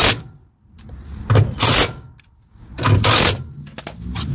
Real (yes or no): yes